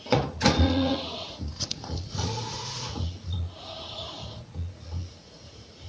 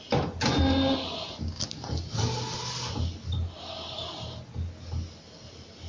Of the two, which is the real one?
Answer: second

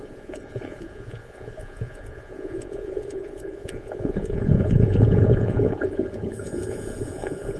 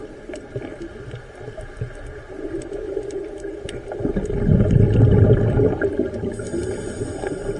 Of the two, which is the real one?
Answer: second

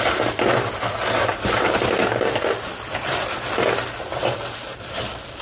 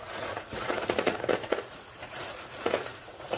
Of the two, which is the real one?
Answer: first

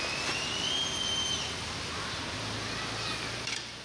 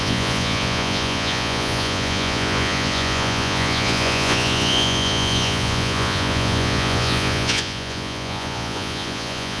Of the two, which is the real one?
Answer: first